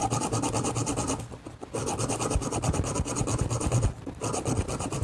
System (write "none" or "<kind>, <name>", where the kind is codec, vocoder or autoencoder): none